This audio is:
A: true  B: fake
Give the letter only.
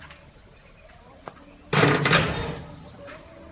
A